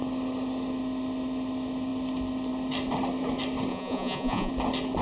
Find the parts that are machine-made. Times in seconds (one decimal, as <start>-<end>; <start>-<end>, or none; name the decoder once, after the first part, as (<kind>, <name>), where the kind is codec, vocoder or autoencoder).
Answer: 3.7-4.5 (vocoder, Vocos)